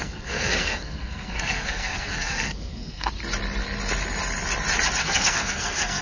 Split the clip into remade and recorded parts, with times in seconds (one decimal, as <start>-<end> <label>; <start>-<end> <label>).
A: 0.0-3.1 remade; 3.1-5.0 recorded; 5.0-6.0 remade